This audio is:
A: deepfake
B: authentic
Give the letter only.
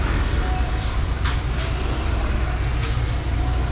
B